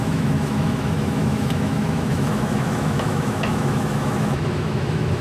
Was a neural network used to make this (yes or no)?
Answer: yes